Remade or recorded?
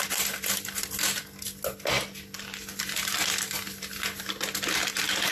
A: recorded